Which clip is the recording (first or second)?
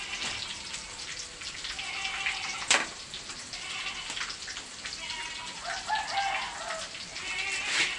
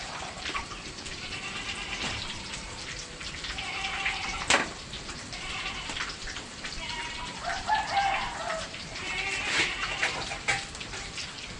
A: first